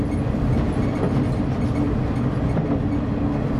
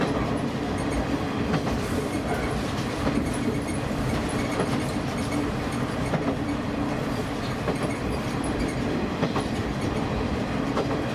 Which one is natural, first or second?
first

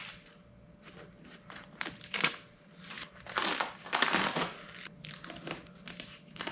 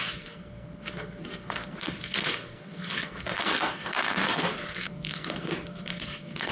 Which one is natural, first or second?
first